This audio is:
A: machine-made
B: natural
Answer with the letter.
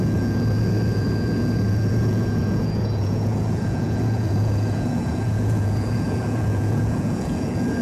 A